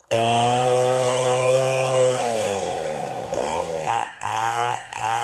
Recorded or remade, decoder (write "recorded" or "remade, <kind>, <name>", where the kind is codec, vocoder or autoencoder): remade, codec, SNAC